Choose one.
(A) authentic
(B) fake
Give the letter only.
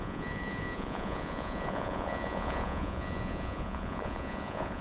B